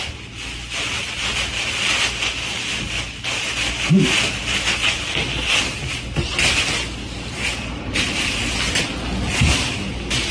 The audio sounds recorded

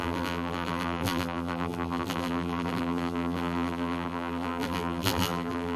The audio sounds remade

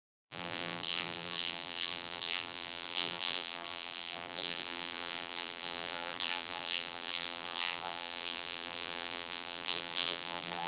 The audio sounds remade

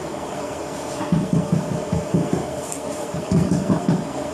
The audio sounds remade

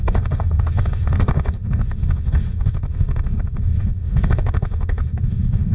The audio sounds remade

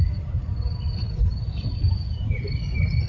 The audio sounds remade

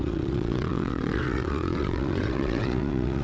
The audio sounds remade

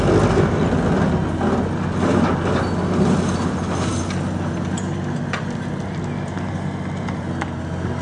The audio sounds recorded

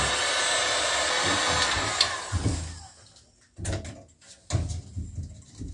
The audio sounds recorded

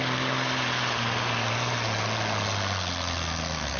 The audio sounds recorded